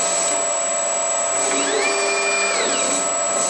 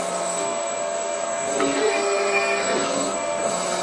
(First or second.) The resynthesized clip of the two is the second